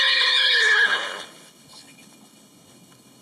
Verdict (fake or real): fake